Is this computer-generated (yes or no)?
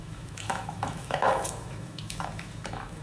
yes